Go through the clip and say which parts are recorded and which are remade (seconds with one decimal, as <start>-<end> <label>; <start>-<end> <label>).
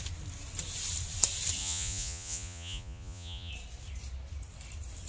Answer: 0.0-1.6 recorded; 1.6-3.5 remade; 3.5-5.1 recorded